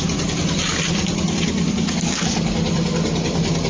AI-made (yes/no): no